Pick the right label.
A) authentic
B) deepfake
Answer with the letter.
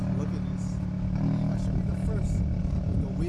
A